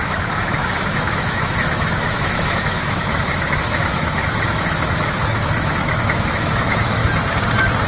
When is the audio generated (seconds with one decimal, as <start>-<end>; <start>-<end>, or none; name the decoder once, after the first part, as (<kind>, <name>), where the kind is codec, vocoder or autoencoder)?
0.0-7.0 (autoencoder, DAC-VAE)